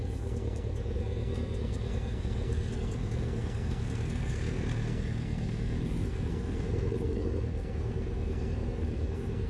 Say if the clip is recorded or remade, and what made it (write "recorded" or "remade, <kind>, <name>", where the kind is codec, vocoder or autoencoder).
remade, codec, SNAC